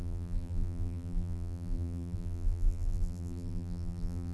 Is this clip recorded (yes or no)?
no